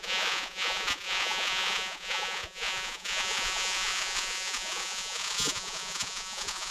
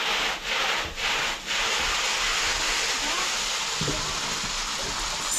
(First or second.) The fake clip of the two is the first